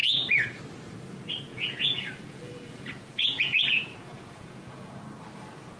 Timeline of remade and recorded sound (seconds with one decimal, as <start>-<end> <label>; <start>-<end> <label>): 0.0-0.6 remade; 0.6-1.5 recorded; 1.5-5.0 remade; 5.0-5.8 recorded